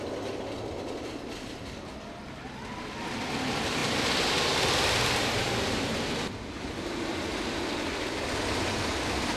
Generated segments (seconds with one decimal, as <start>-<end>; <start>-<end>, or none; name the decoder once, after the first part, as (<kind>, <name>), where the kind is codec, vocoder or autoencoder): none